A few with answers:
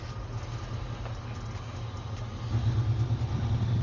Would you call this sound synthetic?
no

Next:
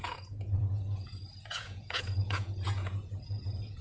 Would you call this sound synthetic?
yes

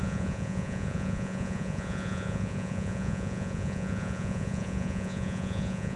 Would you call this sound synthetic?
yes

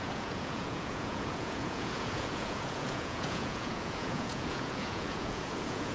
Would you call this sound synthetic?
yes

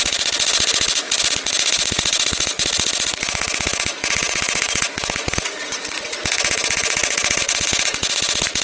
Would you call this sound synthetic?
yes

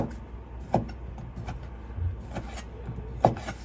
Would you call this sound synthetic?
no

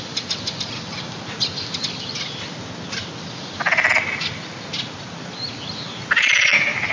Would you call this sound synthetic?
no